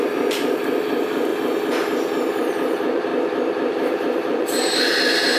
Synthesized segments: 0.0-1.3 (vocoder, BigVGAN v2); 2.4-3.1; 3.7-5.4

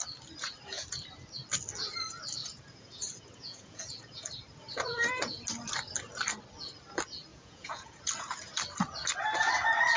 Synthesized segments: 2.4-4.2 (vocoder, Vocos); 7.3-8.1

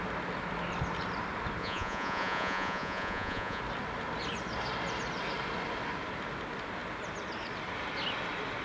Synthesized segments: 1.6-3.6 (vocoder, Vocos)

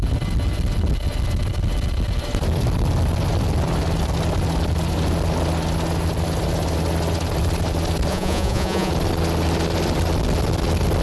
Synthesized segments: 8.1-8.9 (vocoder, Vocos)

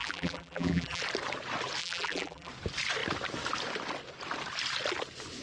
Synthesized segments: 0.0-1.0 (vocoder, BigVGAN v2); 1.8-2.5

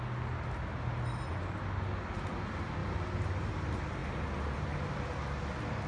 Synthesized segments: none

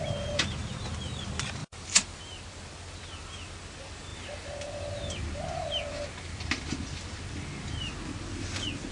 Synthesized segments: 0.6-1.2 (vocoder, BigVGAN v2); 1.6-2.2